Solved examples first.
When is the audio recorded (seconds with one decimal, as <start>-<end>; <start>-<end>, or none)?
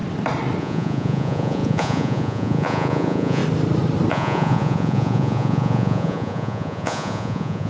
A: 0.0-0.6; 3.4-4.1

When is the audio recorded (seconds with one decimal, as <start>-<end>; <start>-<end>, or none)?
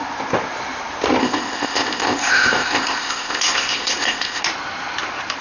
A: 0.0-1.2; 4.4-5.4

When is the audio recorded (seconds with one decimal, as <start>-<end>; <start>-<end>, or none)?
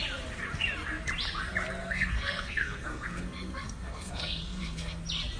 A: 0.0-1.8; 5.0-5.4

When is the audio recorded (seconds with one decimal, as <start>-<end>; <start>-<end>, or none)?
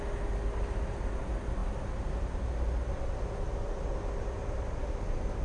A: 0.0-5.4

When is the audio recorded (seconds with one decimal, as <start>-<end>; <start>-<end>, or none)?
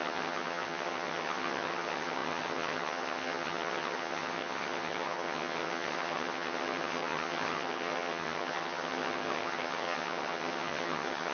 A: none